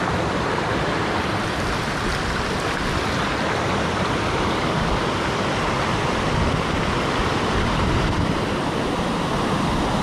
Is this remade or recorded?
recorded